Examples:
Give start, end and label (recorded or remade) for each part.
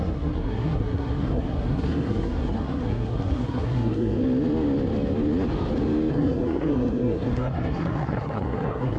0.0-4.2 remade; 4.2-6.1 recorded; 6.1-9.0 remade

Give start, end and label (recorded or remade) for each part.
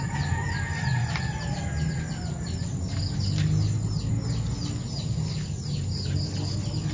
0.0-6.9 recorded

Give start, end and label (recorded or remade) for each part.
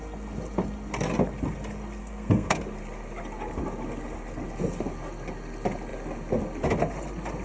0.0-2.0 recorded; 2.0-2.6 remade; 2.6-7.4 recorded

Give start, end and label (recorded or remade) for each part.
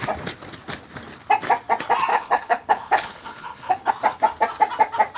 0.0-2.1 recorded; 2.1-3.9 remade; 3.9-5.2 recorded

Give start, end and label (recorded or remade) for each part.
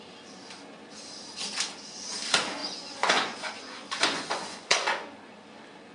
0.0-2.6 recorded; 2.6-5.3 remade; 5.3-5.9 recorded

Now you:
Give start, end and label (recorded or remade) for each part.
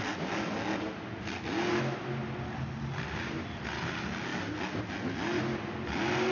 0.0-6.3 recorded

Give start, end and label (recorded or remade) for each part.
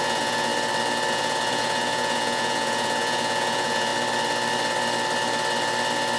0.0-0.5 remade; 0.5-1.1 recorded; 1.1-3.9 remade; 3.9-6.2 recorded